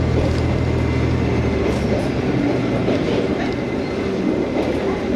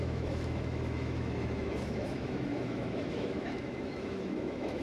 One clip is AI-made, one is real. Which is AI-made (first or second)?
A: second